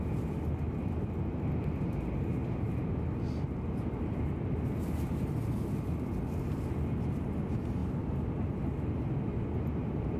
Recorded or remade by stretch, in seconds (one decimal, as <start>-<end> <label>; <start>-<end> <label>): 0.0-10.2 recorded